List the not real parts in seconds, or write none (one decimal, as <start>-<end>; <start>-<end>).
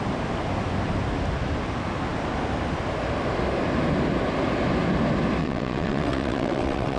5.4-7.0